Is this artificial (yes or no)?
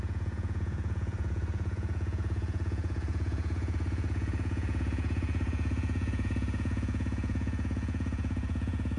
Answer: yes